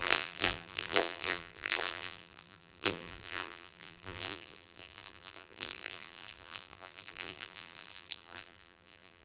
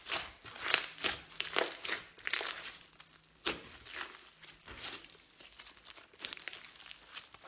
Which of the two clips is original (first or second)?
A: second